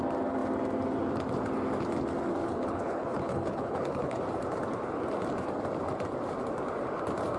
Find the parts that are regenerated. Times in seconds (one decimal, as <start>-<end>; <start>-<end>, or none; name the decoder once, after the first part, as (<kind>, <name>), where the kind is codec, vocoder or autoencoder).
2.4-4.2 (codec, HILCodec)